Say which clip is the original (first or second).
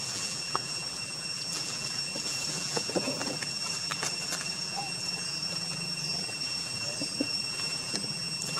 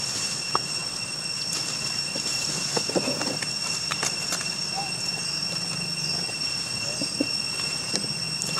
second